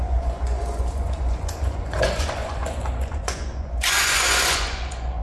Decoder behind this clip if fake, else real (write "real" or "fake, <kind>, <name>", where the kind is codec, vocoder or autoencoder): fake, vocoder, Vocos